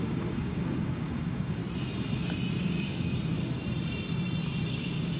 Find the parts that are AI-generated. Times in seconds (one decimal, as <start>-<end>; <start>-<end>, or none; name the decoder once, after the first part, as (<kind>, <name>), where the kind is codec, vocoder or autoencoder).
0.0-1.6 (codec, DAC); 2.6-3.1; 4.7-5.2